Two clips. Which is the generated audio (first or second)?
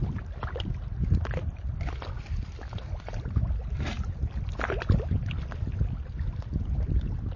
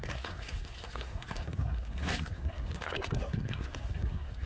second